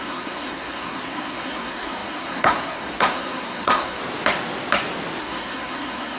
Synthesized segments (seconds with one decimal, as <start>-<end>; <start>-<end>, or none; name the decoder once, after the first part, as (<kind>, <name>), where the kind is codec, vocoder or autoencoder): 0.0-4.0 (codec, SNAC); 5.2-6.2